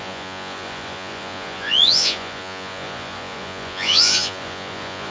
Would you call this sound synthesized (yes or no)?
yes